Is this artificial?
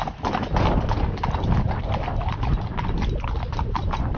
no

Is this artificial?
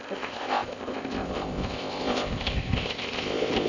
yes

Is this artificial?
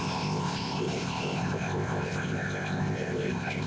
yes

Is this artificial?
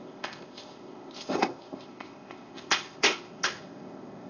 yes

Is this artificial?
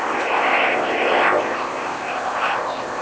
yes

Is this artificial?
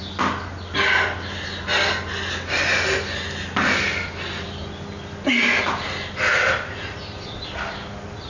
no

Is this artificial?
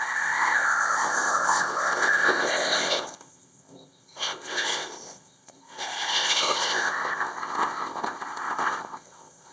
yes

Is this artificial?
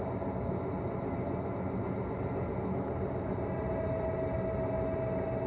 no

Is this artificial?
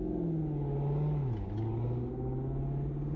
no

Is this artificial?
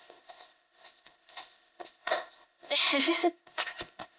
yes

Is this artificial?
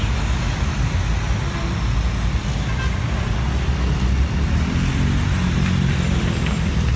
no